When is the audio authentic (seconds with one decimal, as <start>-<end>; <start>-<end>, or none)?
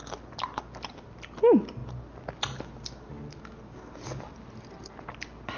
0.0-5.6